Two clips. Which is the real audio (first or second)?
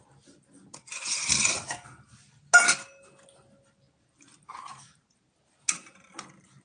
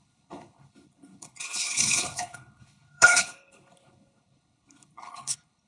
first